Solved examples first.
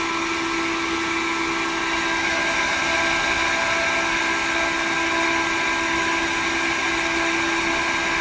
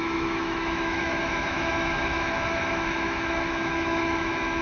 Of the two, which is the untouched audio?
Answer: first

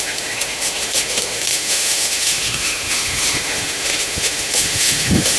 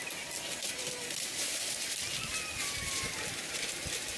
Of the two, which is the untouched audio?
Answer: second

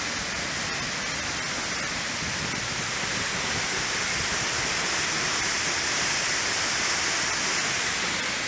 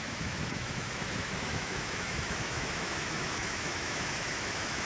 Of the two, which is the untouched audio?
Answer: first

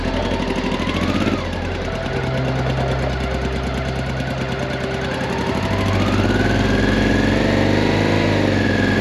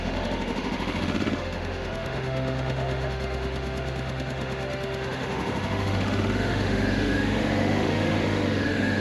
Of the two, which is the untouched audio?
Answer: first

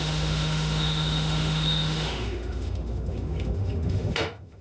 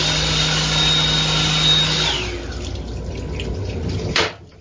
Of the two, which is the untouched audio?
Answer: second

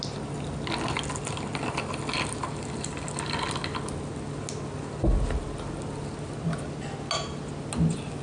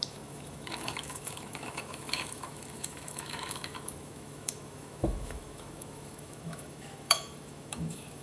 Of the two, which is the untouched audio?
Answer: first